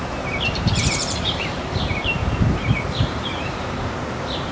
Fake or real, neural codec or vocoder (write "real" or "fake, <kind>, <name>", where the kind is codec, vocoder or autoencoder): fake, vocoder, BigVGAN v2